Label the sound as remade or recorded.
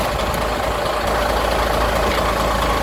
recorded